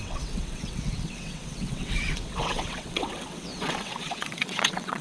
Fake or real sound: fake